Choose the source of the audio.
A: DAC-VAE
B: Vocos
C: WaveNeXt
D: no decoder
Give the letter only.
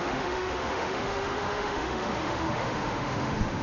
A